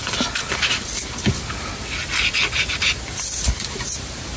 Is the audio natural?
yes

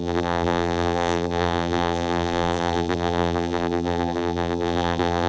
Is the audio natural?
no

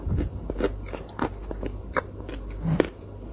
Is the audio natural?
yes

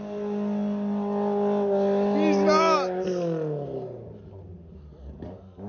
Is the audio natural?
yes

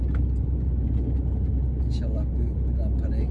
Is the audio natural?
yes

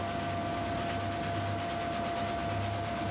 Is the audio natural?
yes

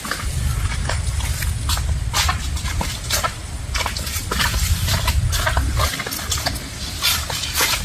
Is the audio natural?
yes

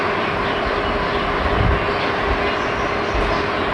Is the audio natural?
yes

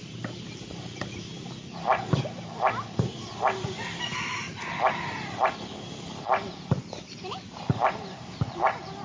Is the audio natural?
no